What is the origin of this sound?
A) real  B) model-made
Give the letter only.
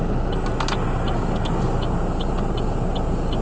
A